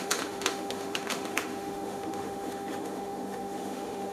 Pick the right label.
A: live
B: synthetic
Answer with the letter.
B